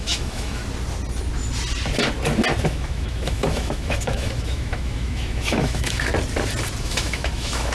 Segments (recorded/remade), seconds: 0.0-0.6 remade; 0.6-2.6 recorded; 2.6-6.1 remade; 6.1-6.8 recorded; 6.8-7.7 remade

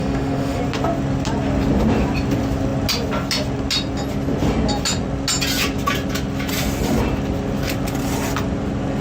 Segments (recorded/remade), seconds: 0.0-0.6 remade; 0.6-9.0 recorded

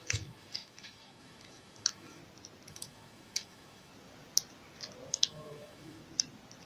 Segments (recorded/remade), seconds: 0.0-2.2 remade; 2.2-2.7 recorded; 2.7-3.9 remade; 3.9-5.1 recorded; 5.1-6.0 remade; 6.0-6.7 recorded